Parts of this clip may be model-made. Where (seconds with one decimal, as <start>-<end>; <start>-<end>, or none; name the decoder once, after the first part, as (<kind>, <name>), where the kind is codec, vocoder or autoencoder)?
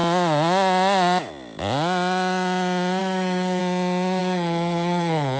3.0-3.6 (codec, SNAC); 4.2-5.4